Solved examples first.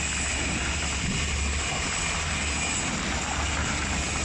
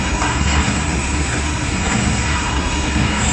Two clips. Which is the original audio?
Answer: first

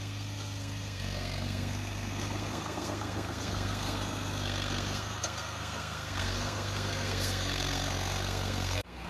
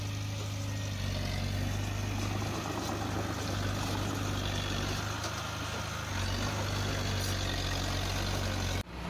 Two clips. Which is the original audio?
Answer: second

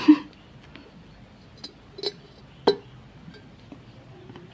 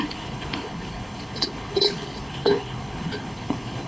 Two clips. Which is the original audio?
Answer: first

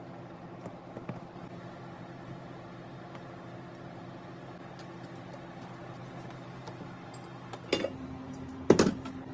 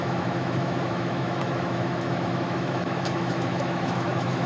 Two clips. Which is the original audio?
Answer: first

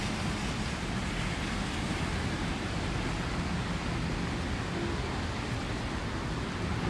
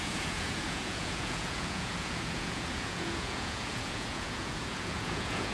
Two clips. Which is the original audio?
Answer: first